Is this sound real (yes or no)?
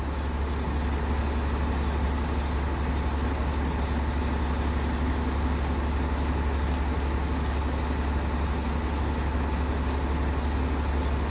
yes